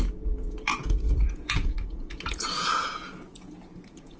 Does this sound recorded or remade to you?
remade